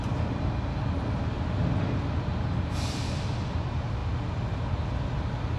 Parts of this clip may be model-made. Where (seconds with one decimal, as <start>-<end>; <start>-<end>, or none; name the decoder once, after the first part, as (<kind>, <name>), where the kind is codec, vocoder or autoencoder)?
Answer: none